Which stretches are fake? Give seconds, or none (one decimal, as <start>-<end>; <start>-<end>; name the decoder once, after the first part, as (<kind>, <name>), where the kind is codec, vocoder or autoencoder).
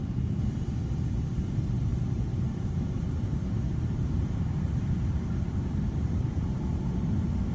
1.9-6.4 (vocoder, BigVGAN v2)